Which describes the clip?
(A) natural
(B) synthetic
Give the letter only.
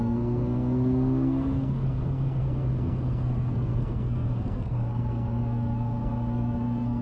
B